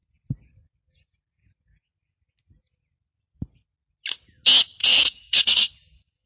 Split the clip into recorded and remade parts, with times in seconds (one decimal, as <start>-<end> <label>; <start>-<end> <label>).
0.0-4.8 recorded; 4.8-5.7 remade; 5.7-6.3 recorded